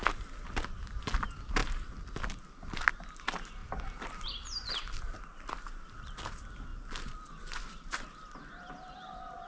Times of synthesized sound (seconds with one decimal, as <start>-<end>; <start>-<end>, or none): 3.6-5.5; 6.7-9.5